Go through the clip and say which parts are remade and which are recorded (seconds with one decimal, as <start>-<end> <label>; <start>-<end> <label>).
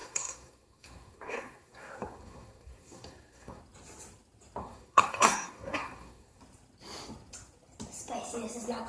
0.0-3.6 remade; 3.6-4.6 recorded; 4.6-6.4 remade; 6.4-8.9 recorded